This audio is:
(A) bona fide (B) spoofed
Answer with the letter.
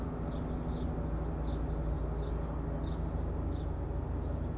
A